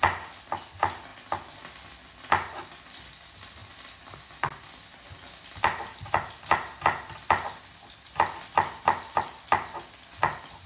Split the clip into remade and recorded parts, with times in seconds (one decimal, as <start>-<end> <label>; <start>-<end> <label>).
0.0-10.7 recorded

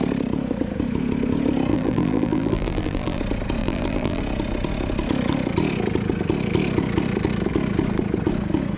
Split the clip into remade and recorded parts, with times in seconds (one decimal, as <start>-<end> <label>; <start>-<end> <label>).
0.0-1.7 recorded; 1.7-3.2 remade; 3.2-3.6 recorded; 3.6-4.2 remade; 4.2-8.8 recorded

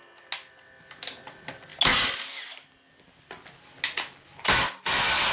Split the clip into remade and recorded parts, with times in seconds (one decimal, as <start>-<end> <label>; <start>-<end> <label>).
0.0-5.3 recorded

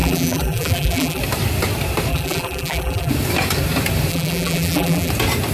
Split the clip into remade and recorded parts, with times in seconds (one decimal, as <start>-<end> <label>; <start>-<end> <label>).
0.0-1.2 remade; 1.2-2.1 recorded; 2.1-3.1 remade; 3.1-4.1 recorded; 4.1-5.1 remade; 5.1-5.5 recorded